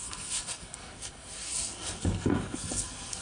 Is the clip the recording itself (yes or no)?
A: no